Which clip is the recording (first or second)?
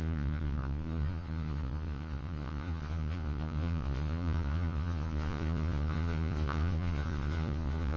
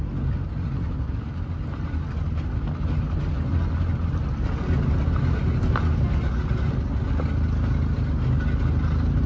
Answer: second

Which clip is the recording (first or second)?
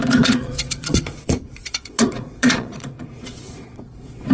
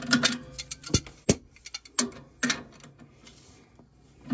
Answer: second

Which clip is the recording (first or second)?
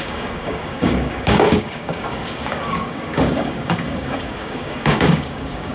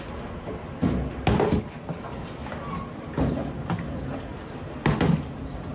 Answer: second